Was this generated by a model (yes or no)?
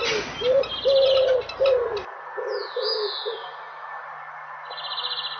no